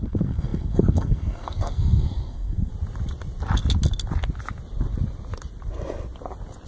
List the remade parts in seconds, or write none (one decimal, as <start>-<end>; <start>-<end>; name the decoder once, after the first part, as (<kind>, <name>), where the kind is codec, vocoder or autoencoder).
0.0-2.7 (codec, SNAC)